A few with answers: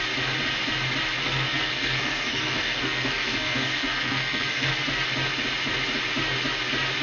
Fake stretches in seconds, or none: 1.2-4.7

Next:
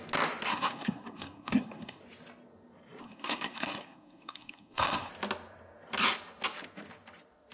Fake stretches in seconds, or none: 0.5-2.0; 3.0-5.1

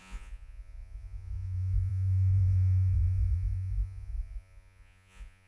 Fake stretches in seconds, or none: 0.0-5.5

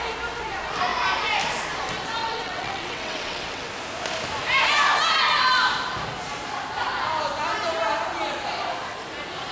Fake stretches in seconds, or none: 2.2-3.7

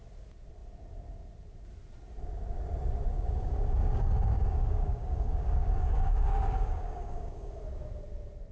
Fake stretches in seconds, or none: 3.1-7.5

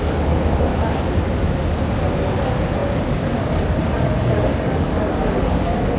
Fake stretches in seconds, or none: 0.0-0.7; 2.4-6.0